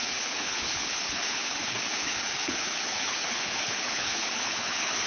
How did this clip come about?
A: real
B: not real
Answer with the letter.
B